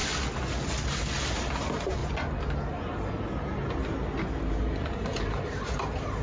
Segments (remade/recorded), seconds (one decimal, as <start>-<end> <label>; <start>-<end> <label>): 0.0-1.3 recorded; 1.3-2.0 remade; 2.0-4.4 recorded; 4.4-6.2 remade